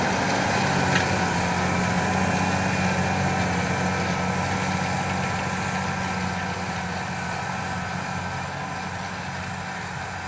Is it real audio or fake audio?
real